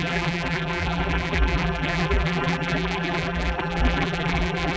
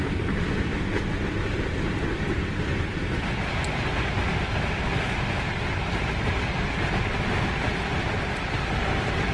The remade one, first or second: first